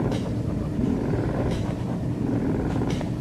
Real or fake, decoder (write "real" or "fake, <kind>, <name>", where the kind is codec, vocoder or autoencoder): fake, vocoder, BigVGAN v2